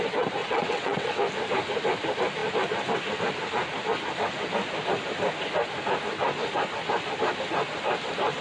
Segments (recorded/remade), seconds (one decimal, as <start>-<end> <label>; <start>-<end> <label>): 0.0-0.4 recorded; 0.4-1.1 remade; 1.1-8.4 recorded